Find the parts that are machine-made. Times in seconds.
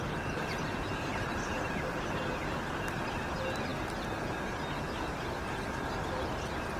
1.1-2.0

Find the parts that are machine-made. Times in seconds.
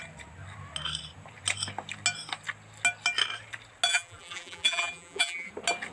3.9-5.5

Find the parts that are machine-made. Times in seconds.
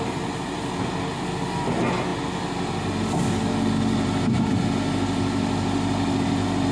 none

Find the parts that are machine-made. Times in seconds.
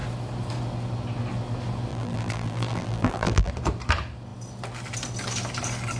1.9-3.5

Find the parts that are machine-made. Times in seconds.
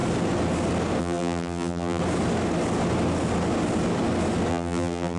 1.0-2.0; 4.5-5.2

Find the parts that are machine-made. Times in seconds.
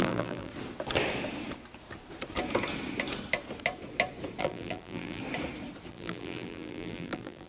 0.0-0.5; 4.4-5.2; 5.9-7.5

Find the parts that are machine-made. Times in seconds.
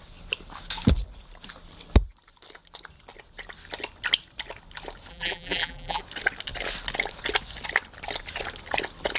5.1-6.0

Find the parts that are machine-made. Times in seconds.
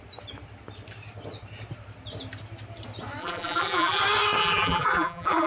3.2-4.0; 4.4-5.5